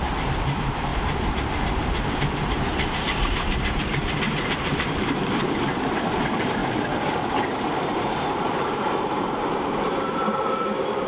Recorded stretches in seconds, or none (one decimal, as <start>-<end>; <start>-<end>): 0.9-2.1; 6.6-8.3